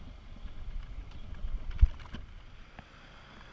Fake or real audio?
real